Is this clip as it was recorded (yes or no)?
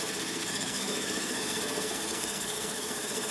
no